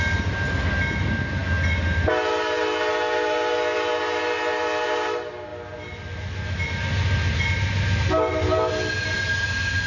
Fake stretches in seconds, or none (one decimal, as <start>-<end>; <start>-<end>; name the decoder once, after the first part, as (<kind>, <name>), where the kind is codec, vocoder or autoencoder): none